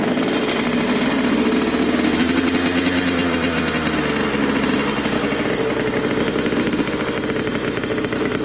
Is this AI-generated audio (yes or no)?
no